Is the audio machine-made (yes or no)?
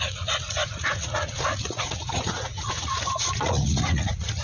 yes